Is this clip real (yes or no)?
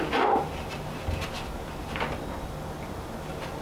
yes